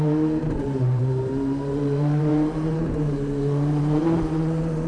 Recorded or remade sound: remade